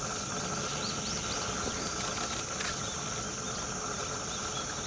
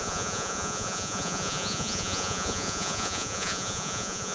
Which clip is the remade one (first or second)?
second